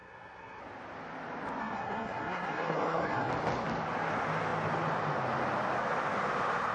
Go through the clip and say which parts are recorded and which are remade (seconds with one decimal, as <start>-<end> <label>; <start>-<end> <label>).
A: 0.0-0.6 remade; 0.6-1.6 recorded; 1.6-3.3 remade; 3.3-6.7 recorded